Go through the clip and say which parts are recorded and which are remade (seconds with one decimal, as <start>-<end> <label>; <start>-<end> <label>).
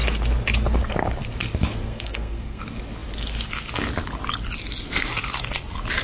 0.0-1.8 recorded; 1.8-2.6 remade; 2.6-6.0 recorded